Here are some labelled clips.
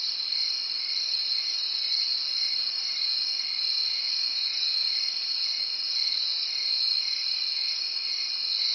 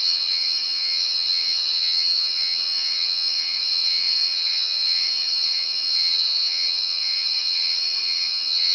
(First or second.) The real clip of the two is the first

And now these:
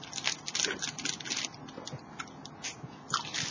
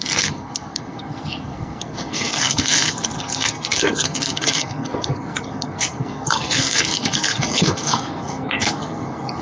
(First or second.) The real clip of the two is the first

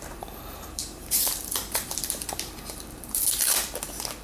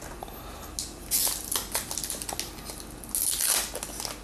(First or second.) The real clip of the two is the second